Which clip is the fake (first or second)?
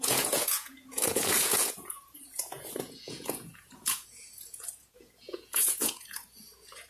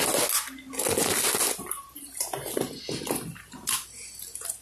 first